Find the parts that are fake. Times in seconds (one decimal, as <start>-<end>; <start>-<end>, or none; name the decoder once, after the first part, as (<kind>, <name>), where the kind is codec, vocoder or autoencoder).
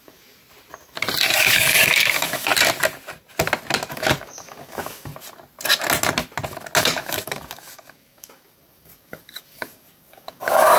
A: 0.0-0.4 (codec, DAC); 1.4-2.5; 3.9-5.1; 6.8-10.8